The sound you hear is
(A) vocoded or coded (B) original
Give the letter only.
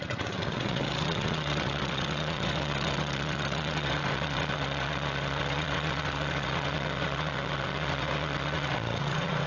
A